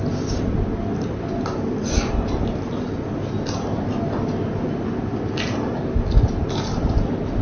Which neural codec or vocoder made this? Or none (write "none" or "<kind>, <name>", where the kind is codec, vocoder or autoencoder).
none